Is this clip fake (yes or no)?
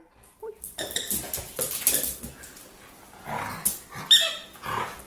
no